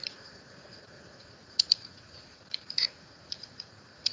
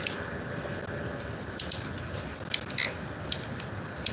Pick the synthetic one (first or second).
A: first